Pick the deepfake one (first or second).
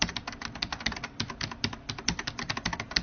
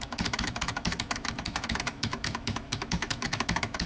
second